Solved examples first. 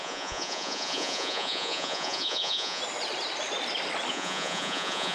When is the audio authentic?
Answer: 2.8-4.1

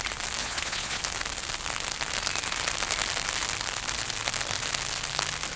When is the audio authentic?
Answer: 0.0-0.4; 1.0-5.6

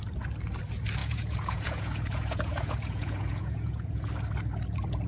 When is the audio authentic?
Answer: 0.0-1.0; 4.1-5.1

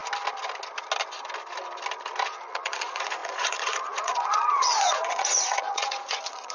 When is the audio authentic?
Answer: 0.0-2.5

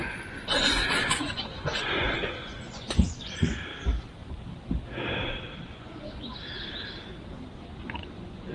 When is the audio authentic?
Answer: 3.7-5.7; 6.3-7.8